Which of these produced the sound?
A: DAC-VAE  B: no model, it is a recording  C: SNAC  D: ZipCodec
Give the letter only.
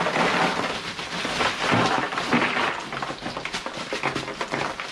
B